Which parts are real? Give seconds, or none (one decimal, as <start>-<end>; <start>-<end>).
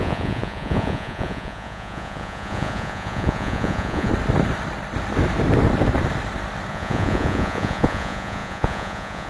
4.1-6.7